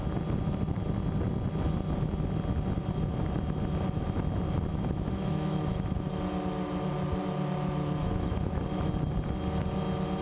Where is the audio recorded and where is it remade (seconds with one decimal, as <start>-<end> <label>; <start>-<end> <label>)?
0.0-4.7 recorded; 4.7-6.1 remade; 6.1-8.0 recorded; 8.0-8.6 remade; 8.6-10.2 recorded